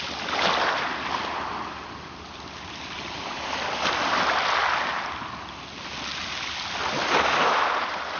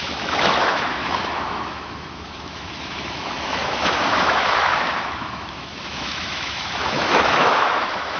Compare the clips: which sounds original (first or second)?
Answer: first